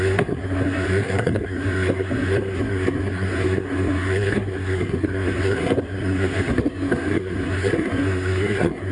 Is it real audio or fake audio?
fake